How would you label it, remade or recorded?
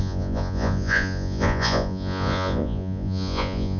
remade